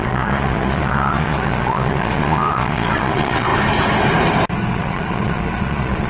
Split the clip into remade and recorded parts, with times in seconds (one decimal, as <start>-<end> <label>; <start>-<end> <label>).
0.0-3.5 remade; 3.5-4.7 recorded; 4.7-6.1 remade